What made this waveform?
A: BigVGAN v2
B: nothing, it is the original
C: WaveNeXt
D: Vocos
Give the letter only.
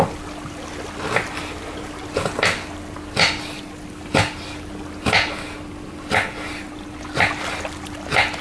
B